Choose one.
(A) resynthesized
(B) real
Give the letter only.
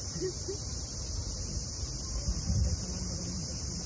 A